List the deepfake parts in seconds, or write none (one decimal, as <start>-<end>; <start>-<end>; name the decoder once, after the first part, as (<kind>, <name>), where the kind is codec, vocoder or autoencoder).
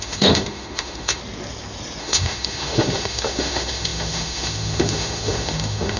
0.0-1.2 (autoencoder, DAC-VAE); 2.0-6.0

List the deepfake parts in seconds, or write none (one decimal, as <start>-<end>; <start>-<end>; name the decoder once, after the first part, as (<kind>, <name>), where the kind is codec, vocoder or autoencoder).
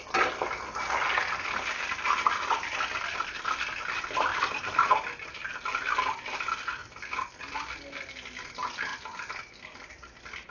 4.3-4.8 (vocoder, BigVGAN v2); 6.8-7.8; 8.9-9.5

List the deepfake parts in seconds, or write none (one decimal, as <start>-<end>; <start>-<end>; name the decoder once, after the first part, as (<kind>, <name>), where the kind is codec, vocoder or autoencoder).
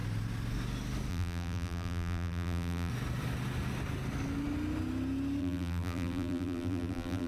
1.1-2.9 (vocoder, BigVGAN v2); 5.4-7.3